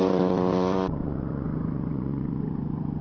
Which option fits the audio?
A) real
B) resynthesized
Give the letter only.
B